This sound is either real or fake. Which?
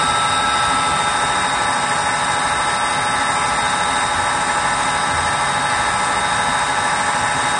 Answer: real